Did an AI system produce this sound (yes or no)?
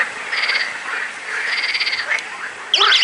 no